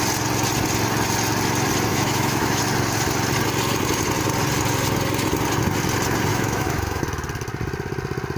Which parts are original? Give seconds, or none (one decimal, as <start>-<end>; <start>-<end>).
0.0-1.9; 2.6-6.3; 7.0-8.4